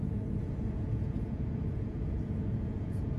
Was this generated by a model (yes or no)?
yes